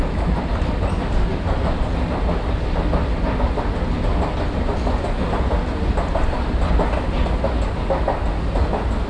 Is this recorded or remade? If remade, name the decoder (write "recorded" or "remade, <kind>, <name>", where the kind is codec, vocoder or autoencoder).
recorded